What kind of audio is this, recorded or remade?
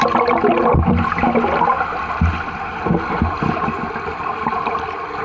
recorded